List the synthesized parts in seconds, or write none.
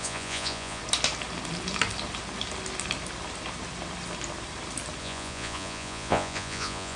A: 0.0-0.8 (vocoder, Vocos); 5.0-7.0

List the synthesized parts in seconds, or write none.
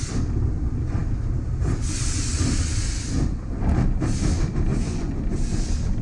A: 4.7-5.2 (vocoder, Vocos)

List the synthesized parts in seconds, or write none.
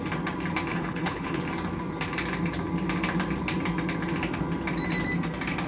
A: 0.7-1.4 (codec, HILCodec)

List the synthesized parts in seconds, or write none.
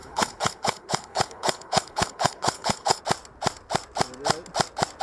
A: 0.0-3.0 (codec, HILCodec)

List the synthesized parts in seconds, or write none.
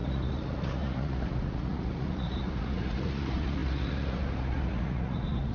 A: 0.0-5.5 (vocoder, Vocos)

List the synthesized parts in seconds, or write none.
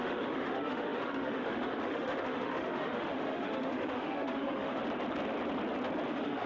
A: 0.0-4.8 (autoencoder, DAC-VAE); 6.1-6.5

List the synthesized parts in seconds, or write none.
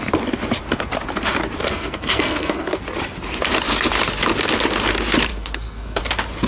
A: 1.7-2.8 (codec, SNAC); 5.3-6.0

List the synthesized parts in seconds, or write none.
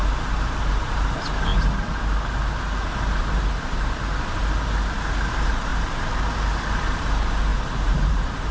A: 0.0-1.5 (vocoder, BigVGAN v2); 5.3-5.7; 6.6-8.5